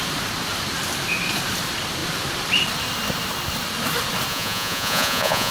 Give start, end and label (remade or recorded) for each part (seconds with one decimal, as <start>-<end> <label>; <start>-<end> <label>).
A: 0.0-4.3 recorded; 4.3-5.5 remade